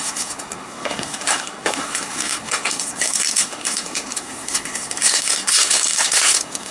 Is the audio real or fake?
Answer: fake